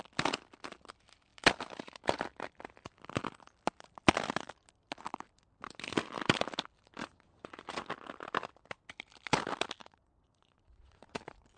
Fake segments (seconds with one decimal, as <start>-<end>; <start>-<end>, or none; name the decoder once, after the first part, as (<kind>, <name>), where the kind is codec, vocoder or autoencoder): 7.0-7.7 (vocoder, Vocos); 9.8-11.2